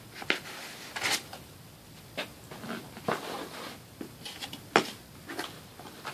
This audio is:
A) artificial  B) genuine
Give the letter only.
B